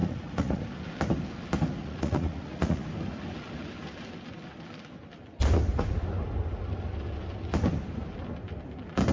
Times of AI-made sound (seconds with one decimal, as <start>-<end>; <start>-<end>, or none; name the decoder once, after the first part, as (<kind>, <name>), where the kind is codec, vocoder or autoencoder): 0.0-0.6 (vocoder, Vocos); 1.8-2.9